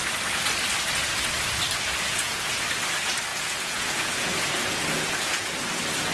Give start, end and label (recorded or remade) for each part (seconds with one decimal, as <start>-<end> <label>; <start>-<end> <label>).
0.0-1.9 recorded; 1.9-2.6 remade; 2.6-3.3 recorded; 3.3-5.5 remade; 5.5-6.1 recorded